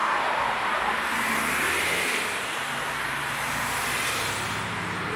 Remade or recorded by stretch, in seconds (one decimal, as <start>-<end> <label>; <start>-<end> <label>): 0.0-3.1 remade; 3.1-5.2 recorded

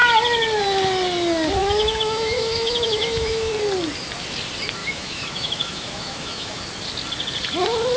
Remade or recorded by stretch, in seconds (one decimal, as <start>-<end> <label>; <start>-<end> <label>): 0.0-1.6 recorded; 1.6-3.5 remade; 3.5-4.8 recorded; 4.8-6.6 remade; 6.6-8.0 recorded